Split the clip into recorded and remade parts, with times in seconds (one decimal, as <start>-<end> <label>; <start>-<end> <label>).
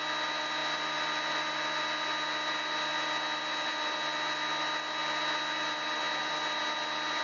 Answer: 0.0-7.2 recorded